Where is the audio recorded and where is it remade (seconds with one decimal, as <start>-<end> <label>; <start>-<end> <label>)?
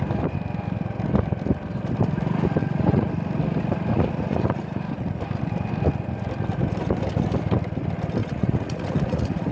0.0-2.6 recorded; 2.6-3.1 remade; 3.1-3.9 recorded; 3.9-5.2 remade; 5.2-8.2 recorded; 8.2-9.5 remade